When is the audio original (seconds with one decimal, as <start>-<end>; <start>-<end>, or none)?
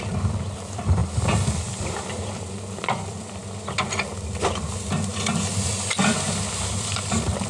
3.4-4.5; 5.1-6.7